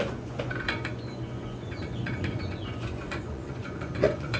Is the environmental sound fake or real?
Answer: fake